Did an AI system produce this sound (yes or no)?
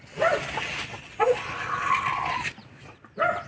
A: no